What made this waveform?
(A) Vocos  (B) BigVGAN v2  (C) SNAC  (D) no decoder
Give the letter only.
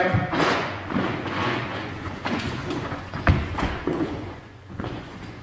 A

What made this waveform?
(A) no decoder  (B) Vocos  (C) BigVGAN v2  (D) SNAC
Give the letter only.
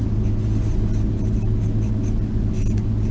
A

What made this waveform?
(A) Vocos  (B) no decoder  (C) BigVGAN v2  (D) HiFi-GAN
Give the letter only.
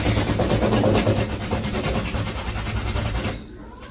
B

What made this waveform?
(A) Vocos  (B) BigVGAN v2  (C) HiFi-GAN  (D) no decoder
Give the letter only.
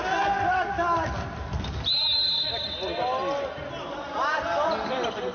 D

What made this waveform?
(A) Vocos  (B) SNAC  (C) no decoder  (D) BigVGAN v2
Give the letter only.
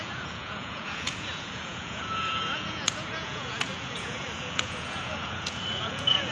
A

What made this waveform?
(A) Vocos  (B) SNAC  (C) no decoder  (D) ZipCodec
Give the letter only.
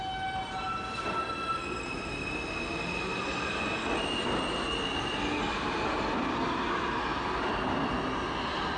C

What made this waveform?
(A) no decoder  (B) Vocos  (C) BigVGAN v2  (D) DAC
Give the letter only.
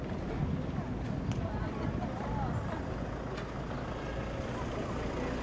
A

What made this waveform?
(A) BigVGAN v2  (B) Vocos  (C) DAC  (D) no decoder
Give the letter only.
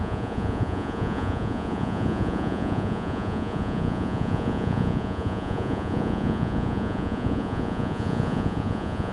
B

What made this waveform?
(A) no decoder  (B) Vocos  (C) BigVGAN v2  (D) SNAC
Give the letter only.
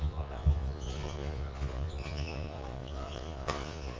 B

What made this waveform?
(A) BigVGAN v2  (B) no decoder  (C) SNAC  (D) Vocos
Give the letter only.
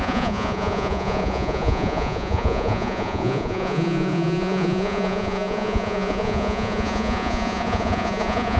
D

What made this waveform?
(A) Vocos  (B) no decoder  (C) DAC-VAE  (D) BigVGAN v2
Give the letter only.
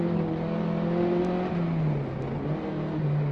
B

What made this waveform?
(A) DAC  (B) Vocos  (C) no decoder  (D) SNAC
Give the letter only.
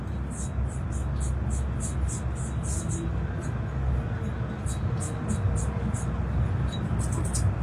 C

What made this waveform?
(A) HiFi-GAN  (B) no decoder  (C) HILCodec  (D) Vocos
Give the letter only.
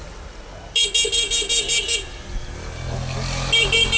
B